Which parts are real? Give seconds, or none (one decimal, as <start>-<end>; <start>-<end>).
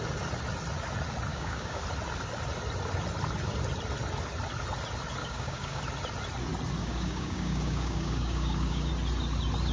0.0-1.3; 1.8-5.2; 5.8-6.8; 8.9-9.7